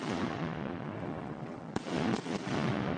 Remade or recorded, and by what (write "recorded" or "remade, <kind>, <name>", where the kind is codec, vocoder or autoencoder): remade, vocoder, Vocos